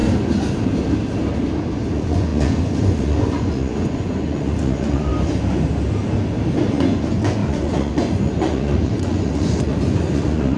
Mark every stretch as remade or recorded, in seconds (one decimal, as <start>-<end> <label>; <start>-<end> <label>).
0.0-1.9 recorded; 1.9-5.1 remade; 5.1-6.7 recorded; 6.7-10.6 remade